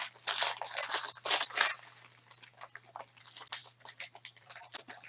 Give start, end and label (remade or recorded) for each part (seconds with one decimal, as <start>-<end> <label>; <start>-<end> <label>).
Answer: 0.0-3.6 recorded; 3.6-5.1 remade